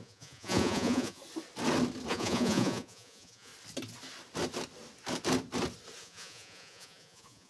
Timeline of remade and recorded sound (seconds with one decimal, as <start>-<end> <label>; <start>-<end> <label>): 0.0-1.2 remade; 1.2-2.1 recorded; 2.1-3.5 remade; 3.5-6.0 recorded; 6.0-7.5 remade